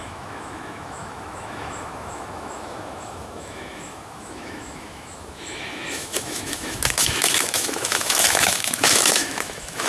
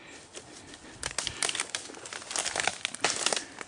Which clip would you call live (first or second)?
second